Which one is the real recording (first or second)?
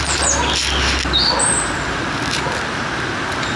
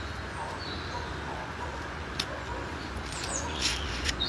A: first